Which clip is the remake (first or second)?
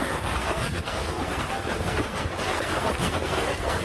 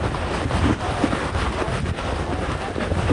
first